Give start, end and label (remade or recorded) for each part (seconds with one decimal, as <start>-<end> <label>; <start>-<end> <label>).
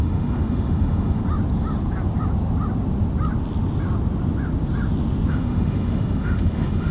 0.0-1.2 remade; 1.2-5.3 recorded; 5.3-6.9 remade